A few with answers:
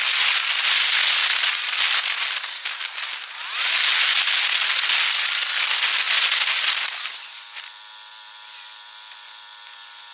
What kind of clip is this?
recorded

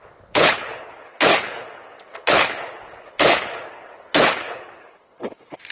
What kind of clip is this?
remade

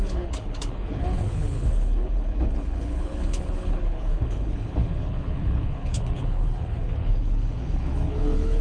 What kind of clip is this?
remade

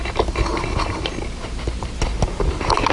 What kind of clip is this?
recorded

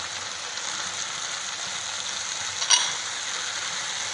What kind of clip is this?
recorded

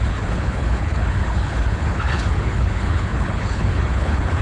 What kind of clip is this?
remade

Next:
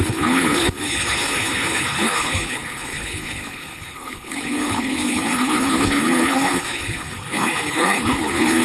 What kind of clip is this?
remade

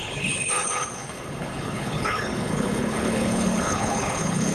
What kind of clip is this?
remade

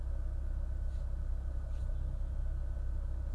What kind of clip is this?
recorded